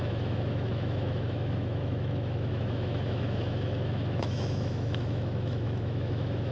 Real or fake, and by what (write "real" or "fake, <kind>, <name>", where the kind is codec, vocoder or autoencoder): fake, autoencoder, DAC-VAE